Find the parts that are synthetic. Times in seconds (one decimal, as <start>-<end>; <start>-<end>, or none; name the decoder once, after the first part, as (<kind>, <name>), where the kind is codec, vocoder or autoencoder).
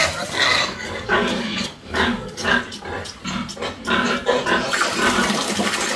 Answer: 0.5-2.6 (codec, DAC)